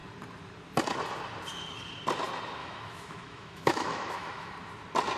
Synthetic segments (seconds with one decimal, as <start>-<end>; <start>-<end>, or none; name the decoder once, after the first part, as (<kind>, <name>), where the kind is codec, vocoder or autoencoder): 2.6-4.5 (autoencoder, DAC-VAE)